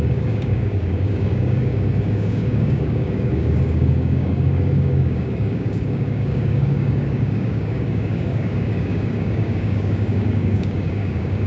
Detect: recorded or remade remade